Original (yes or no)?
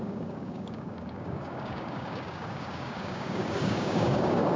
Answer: no